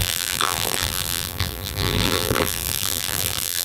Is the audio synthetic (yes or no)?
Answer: yes